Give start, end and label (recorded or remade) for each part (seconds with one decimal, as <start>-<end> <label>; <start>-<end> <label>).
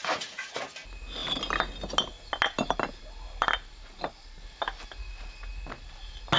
0.0-0.6 remade; 0.6-6.4 recorded